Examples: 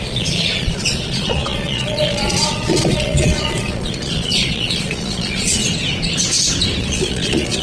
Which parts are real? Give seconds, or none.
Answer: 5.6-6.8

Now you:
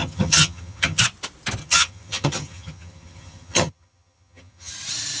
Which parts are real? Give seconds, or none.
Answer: 1.0-1.6; 4.7-5.2

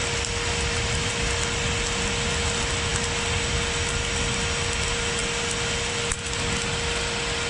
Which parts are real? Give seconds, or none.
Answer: 0.0-7.5

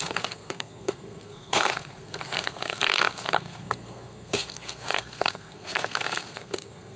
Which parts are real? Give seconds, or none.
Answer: none

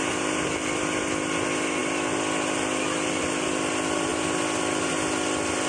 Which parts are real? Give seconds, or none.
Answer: 0.0-5.7

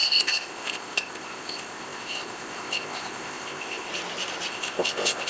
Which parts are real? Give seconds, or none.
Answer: 3.9-4.5